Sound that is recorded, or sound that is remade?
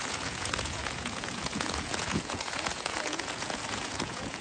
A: remade